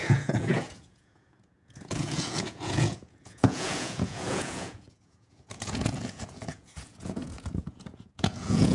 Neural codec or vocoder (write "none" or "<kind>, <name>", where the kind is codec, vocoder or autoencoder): vocoder, Vocos